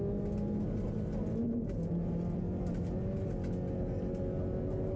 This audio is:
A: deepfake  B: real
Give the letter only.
B